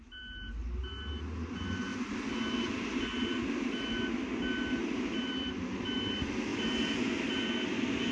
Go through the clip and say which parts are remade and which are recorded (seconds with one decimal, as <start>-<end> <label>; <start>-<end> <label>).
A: 0.0-8.1 recorded